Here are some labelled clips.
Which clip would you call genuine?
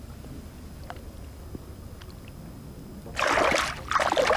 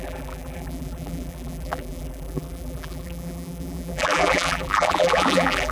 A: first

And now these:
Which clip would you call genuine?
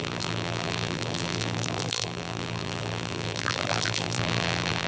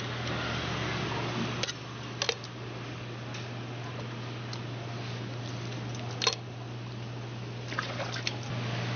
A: second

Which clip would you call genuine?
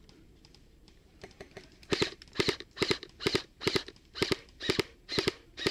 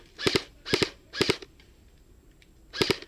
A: second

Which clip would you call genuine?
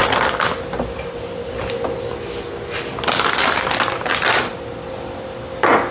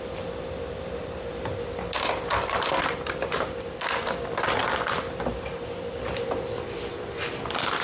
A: first